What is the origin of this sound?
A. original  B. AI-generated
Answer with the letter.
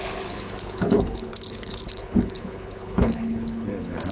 B